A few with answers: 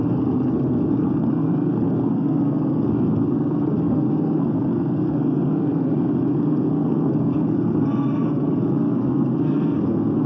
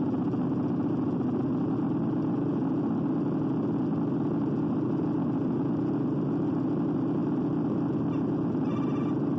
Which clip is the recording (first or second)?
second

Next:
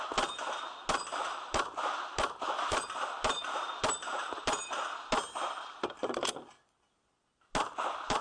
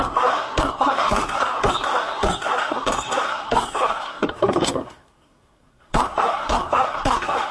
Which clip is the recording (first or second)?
first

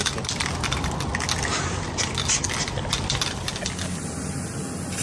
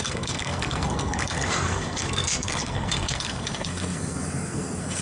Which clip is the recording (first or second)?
first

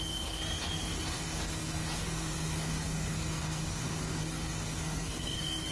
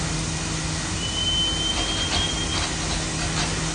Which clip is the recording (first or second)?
second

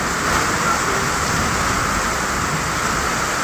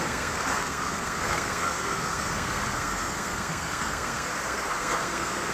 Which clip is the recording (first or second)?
first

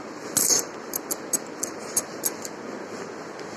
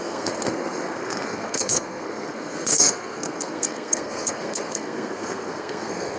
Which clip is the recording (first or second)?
first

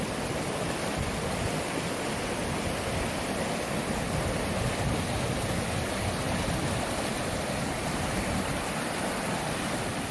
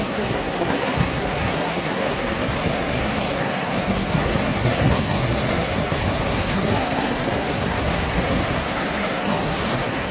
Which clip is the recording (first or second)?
first